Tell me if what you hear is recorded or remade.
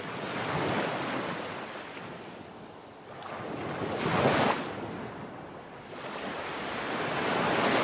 recorded